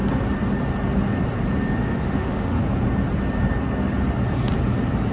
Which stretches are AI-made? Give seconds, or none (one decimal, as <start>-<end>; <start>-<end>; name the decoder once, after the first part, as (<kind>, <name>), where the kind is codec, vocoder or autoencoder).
1.8-2.6 (autoencoder, DAC-VAE)